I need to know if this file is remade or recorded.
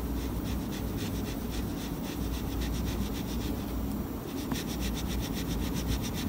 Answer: recorded